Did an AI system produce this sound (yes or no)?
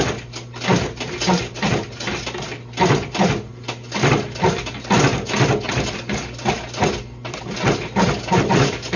no